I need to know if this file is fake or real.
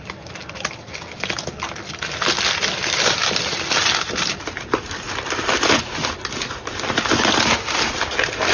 real